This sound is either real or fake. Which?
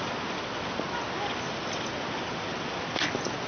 real